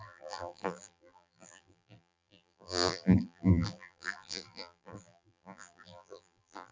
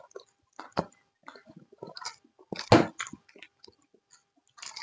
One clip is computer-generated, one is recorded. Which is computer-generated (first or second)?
first